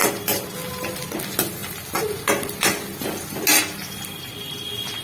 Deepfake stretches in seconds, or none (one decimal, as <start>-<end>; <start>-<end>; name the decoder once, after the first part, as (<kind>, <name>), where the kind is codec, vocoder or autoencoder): none